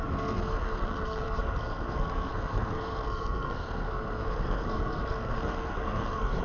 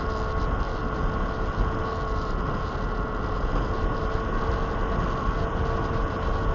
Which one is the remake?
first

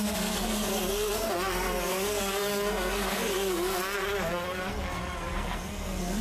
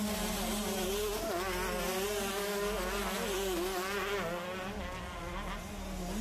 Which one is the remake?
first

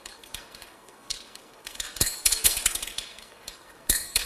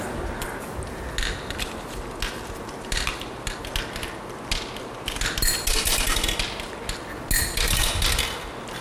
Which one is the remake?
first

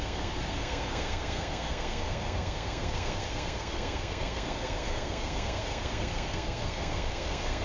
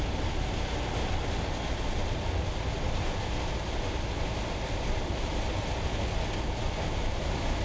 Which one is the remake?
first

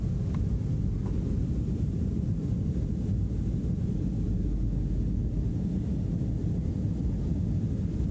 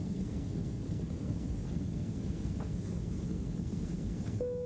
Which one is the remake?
second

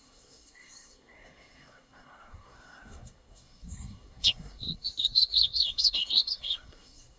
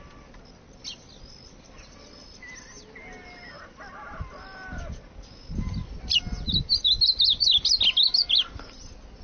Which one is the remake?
first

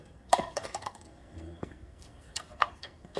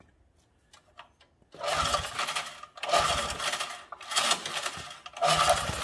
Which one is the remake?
first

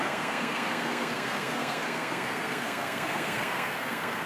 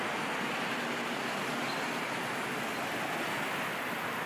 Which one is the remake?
first